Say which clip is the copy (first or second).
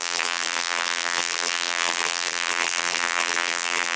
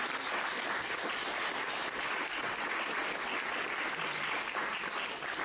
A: first